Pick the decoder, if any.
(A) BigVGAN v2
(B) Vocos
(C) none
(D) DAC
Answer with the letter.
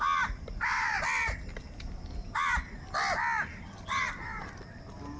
C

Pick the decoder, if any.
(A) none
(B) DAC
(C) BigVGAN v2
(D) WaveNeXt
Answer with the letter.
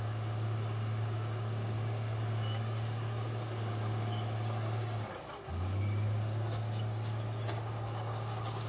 B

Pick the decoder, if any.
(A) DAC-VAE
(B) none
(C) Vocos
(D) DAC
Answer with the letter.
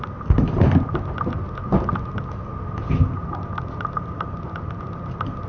B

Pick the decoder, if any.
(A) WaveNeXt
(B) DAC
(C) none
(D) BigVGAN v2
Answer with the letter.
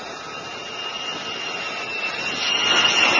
C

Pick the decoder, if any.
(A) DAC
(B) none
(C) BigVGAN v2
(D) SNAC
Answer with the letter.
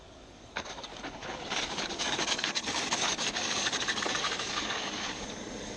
A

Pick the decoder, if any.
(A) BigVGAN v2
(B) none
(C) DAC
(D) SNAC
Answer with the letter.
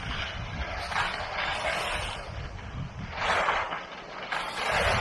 B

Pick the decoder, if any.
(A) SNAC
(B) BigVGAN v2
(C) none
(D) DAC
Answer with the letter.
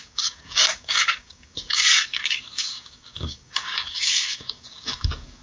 D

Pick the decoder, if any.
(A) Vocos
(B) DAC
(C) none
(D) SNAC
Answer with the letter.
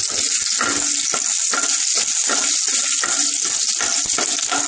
C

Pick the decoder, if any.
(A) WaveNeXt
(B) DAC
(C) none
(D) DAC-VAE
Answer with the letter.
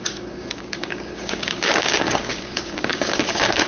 B